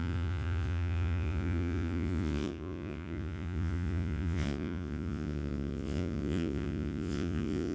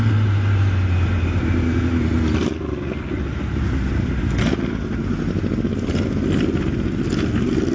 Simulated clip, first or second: first